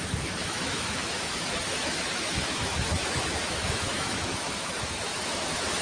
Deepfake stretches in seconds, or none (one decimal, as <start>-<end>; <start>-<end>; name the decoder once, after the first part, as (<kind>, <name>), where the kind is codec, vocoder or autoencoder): 0.0-5.8 (autoencoder, DAC-VAE)